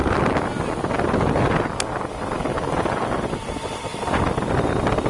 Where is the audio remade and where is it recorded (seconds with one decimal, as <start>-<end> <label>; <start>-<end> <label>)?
0.0-5.1 recorded